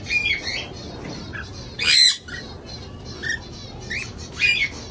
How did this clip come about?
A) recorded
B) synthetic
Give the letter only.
A